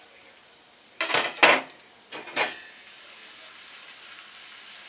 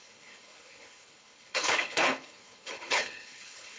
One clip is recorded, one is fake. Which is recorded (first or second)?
first